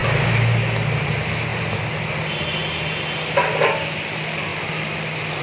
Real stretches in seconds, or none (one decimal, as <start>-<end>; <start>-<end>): 0.0-1.1; 1.5-2.1; 2.6-3.6